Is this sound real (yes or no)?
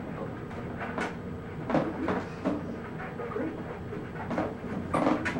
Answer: yes